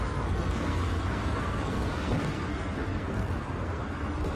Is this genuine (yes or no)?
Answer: no